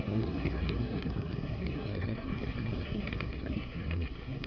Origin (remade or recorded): remade